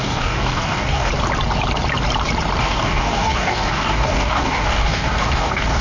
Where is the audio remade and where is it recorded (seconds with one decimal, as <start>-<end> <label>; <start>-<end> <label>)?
0.0-1.1 remade; 1.1-2.6 recorded; 2.6-5.8 remade